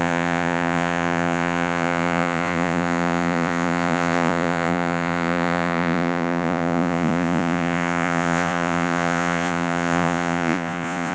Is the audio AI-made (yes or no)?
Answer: yes